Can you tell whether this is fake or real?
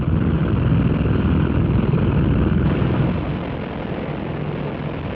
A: real